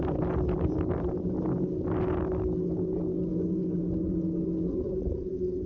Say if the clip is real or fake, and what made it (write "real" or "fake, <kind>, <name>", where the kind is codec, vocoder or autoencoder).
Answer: real